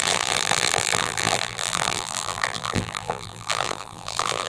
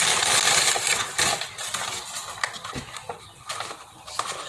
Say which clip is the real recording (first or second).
second